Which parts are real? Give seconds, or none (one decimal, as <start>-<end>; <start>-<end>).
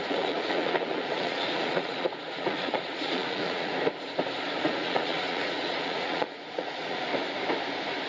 3.7-4.6; 7.1-8.1